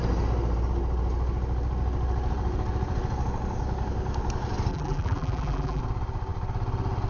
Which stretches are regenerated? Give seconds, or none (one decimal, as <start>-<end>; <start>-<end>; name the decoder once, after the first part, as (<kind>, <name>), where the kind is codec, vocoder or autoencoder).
4.7-5.8 (vocoder, BigVGAN v2)